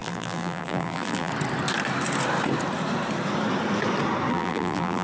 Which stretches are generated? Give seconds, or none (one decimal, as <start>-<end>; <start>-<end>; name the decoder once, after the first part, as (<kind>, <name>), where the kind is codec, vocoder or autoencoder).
0.0-1.3 (vocoder, BigVGAN v2); 4.3-5.0